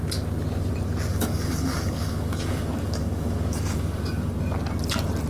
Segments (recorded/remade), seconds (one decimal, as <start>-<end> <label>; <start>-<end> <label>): 0.0-1.1 recorded; 1.1-4.3 remade; 4.3-5.3 recorded